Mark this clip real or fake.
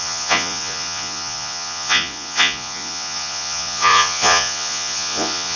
fake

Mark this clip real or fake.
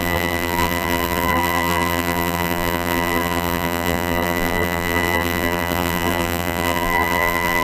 fake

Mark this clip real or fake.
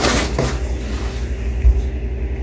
real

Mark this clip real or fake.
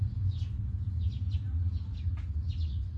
real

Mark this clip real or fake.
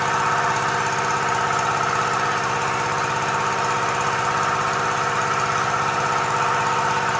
real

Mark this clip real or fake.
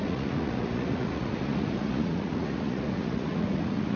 fake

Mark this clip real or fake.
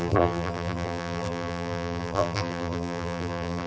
fake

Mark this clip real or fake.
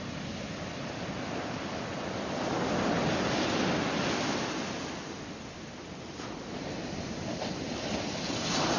real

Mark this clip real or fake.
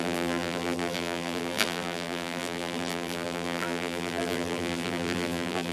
fake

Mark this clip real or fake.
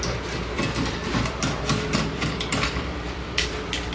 fake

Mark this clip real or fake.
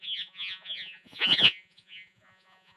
fake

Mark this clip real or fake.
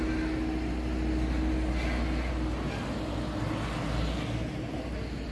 real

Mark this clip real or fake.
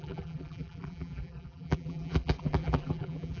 fake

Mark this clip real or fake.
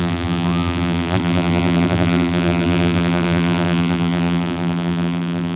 fake